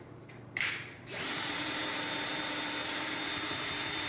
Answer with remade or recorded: remade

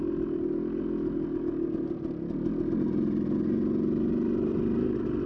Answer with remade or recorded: recorded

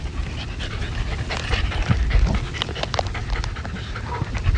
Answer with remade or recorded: recorded